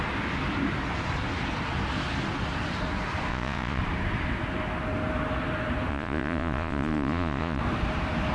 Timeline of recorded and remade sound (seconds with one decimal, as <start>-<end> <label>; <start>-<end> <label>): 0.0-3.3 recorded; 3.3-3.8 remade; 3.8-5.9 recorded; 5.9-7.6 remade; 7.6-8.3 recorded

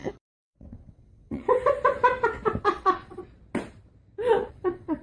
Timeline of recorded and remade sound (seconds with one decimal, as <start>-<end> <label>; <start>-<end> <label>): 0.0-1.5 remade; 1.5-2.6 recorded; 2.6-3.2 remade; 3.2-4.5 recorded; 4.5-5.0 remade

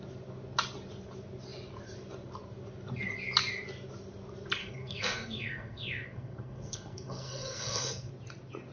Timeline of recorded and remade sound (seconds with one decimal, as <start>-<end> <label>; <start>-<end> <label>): 0.0-4.6 recorded; 4.6-8.1 remade; 8.1-8.7 recorded

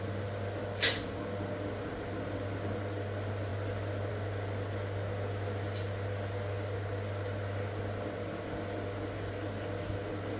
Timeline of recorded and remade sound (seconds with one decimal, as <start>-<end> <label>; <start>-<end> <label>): 0.0-10.4 recorded